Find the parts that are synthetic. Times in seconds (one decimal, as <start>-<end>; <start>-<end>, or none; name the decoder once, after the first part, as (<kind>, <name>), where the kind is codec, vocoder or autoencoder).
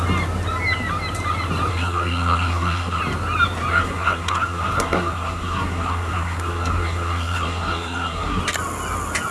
1.7-3.0 (codec, SNAC); 3.7-8.4